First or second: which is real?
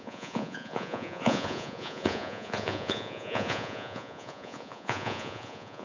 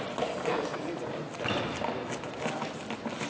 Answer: second